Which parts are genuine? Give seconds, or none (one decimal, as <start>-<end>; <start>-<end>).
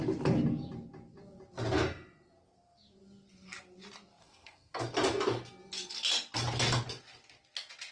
0.0-4.2; 4.8-7.9